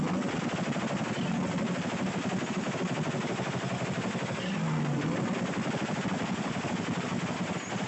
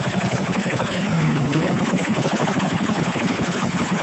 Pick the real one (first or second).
first